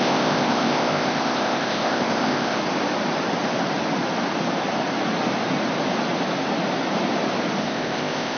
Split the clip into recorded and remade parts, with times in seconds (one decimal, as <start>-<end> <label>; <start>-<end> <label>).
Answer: 0.0-2.6 remade; 2.6-7.6 recorded; 7.6-8.4 remade